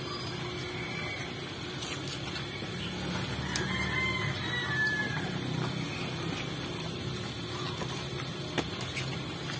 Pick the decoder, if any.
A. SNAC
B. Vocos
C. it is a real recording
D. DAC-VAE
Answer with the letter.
C